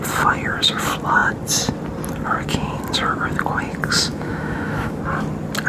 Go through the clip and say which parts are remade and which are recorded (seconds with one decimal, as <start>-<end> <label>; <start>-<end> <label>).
0.0-4.1 recorded; 4.1-5.0 remade; 5.0-5.7 recorded